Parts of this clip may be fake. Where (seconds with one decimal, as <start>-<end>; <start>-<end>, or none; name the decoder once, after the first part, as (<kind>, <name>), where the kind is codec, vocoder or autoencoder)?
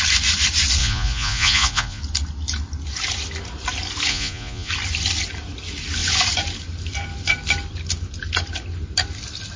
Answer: 0.8-2.0 (vocoder, Vocos); 4.1-4.7